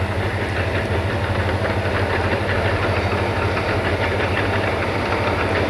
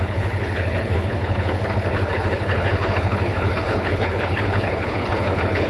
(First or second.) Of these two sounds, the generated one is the second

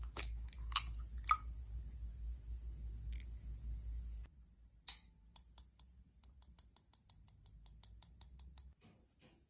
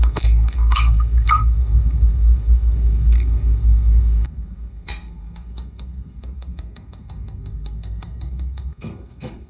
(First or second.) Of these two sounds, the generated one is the second